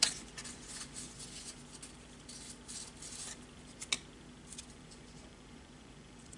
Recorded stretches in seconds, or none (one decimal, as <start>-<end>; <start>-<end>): 1.6-4.6